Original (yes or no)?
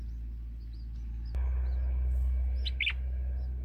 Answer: yes